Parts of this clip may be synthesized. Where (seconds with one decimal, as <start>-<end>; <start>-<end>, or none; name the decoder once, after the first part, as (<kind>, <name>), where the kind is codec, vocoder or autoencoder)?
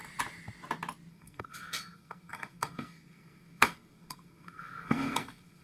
1.1-5.6 (codec, SNAC)